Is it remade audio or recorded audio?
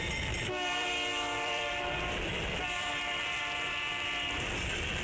remade